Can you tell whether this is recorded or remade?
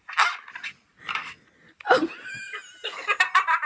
recorded